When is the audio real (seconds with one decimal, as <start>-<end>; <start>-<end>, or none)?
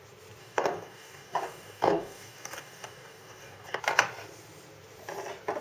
0.0-0.4; 3.8-5.6